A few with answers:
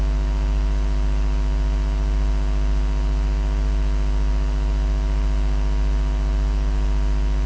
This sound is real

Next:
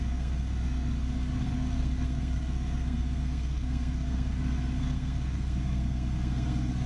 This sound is fake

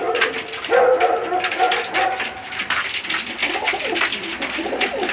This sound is real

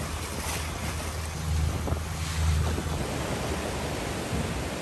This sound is real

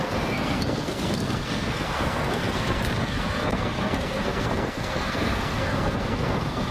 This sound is fake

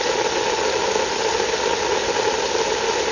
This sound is real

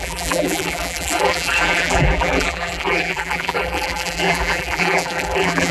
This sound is fake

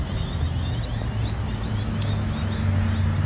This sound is real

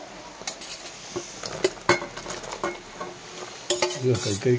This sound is real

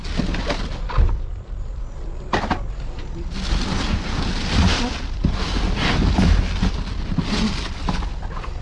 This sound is real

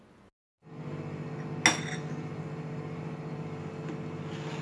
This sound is real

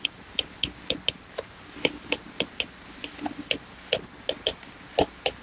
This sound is real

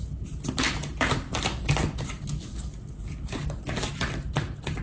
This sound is real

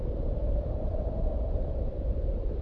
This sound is real